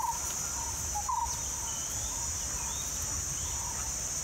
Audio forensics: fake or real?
real